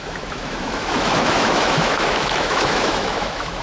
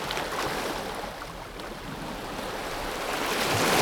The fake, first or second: first